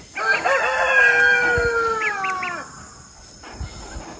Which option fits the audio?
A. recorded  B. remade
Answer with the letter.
A